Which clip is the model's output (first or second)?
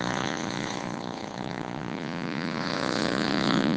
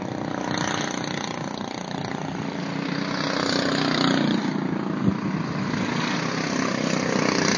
first